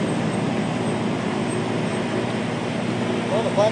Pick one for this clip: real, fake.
real